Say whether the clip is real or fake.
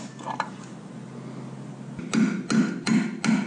real